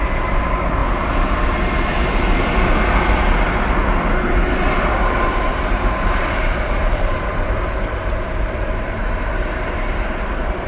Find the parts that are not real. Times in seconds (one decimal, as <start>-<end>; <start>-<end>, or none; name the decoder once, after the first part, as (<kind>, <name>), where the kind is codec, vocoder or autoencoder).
0.0-0.8 (vocoder, BigVGAN v2); 4.7-10.7